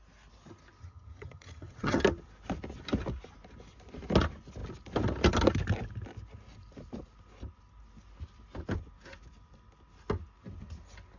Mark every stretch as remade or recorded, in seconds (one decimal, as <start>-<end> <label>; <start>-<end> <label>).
0.0-0.8 recorded; 0.8-2.0 remade; 2.0-11.2 recorded

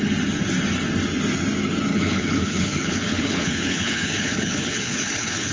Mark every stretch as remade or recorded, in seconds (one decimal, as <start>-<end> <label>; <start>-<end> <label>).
0.0-1.9 recorded; 1.9-5.5 remade